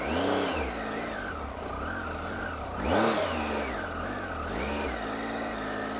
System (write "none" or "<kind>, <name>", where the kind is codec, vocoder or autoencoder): none